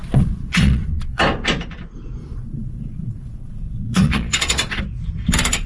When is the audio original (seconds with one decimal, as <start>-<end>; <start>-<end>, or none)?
1.2-2.2; 4.8-5.7